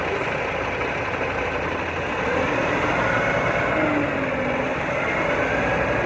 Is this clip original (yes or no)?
yes